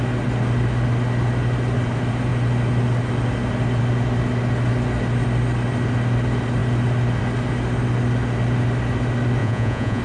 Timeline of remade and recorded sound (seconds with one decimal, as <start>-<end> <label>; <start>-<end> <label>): 0.0-9.4 recorded; 9.4-10.0 remade